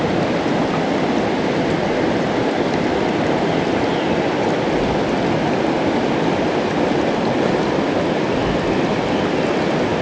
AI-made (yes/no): no